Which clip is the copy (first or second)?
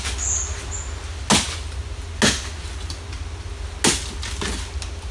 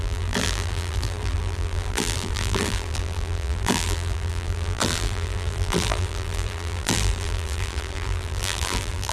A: second